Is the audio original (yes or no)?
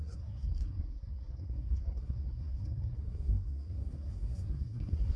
no